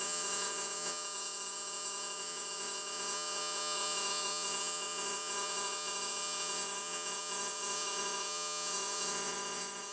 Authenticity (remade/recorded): remade